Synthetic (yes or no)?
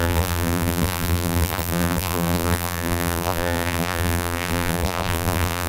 yes